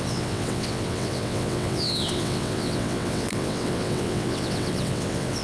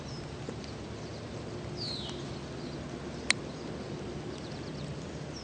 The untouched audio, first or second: second